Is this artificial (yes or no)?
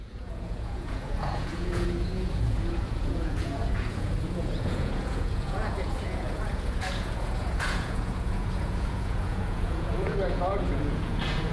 yes